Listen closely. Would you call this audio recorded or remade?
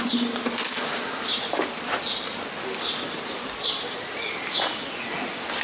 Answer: recorded